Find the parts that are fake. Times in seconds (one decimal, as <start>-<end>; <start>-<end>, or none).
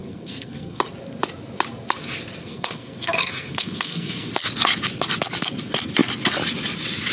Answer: 0.0-0.8; 2.4-4.3